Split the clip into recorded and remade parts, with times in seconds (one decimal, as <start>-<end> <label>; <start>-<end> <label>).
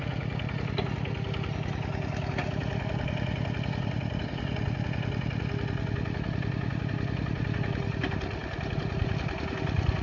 0.0-10.0 recorded